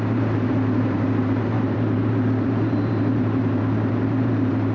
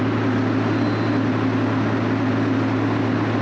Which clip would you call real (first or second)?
second